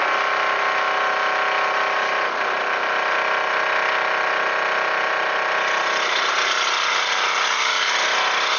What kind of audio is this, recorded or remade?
recorded